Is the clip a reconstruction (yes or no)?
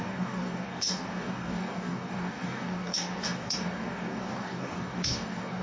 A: yes